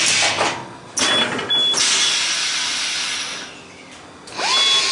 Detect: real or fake real